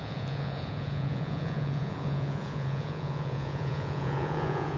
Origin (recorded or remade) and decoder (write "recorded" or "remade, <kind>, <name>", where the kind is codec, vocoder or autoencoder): remade, vocoder, Vocos